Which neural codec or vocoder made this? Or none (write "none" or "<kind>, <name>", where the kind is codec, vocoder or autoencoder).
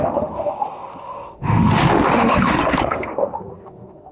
autoencoder, DAC-VAE